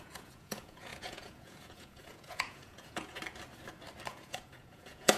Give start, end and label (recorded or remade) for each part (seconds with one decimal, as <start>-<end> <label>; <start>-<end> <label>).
0.0-3.2 remade; 3.2-4.1 recorded; 4.1-5.2 remade